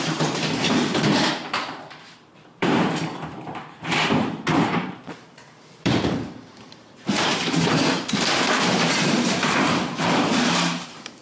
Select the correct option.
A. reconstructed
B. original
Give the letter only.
A